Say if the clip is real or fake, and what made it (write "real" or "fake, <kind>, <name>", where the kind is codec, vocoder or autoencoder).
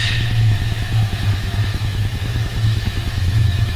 fake, autoencoder, DAC-VAE